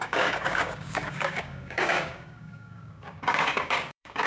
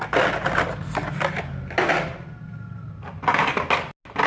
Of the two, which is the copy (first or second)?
first